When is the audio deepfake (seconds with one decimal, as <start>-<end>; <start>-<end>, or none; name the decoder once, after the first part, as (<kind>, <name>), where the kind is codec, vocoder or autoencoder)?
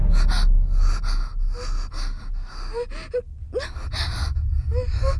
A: none